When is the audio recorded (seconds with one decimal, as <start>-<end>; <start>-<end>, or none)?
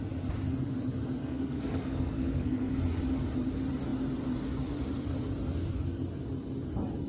0.0-1.2; 2.7-7.1